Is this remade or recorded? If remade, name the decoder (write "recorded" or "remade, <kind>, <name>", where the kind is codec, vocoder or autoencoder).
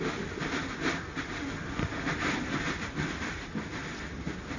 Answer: recorded